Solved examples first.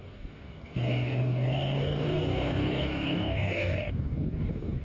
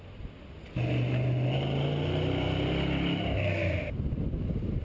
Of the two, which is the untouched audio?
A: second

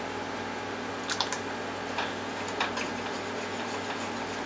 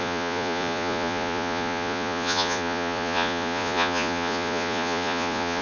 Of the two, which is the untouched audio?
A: first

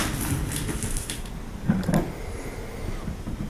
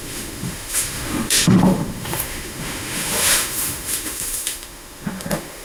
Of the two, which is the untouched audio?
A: first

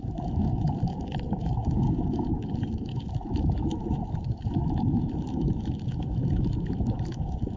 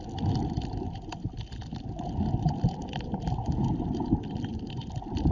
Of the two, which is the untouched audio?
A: second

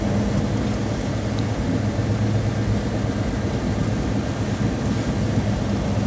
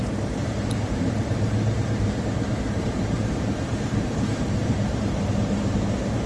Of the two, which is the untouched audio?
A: first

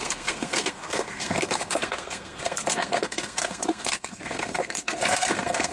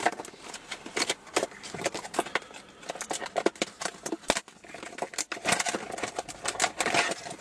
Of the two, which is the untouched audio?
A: second